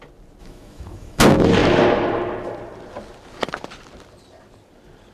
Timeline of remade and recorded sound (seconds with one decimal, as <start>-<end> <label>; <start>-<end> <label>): 0.0-0.4 recorded; 0.4-1.2 remade; 1.2-5.1 recorded